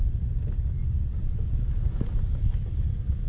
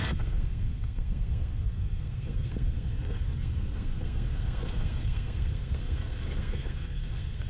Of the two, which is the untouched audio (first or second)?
first